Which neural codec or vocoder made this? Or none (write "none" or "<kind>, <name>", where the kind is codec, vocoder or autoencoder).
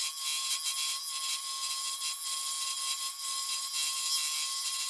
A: none